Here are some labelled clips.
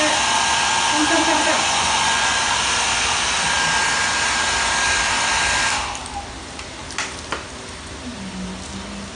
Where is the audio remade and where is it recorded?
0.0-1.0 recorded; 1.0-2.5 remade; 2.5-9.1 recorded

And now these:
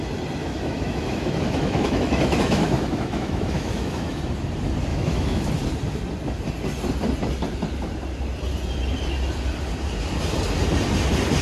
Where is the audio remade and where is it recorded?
0.0-0.4 recorded; 0.4-4.2 remade; 4.2-4.9 recorded; 4.9-5.5 remade; 5.5-11.4 recorded

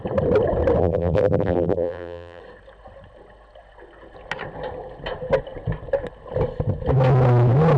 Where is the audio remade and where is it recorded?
0.0-0.8 recorded; 0.8-2.4 remade; 2.4-7.8 recorded

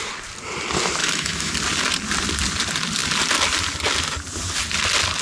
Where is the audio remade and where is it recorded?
0.0-1.0 recorded; 1.0-1.5 remade; 1.5-5.2 recorded